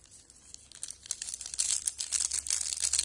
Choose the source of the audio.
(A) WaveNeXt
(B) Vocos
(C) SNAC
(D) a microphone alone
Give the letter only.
D